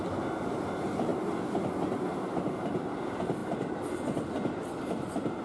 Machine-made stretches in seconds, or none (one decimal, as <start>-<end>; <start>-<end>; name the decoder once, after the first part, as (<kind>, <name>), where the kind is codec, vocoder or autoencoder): none